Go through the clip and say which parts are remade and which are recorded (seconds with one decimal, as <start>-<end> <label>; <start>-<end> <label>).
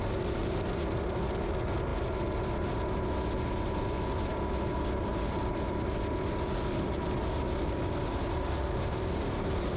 0.0-9.8 recorded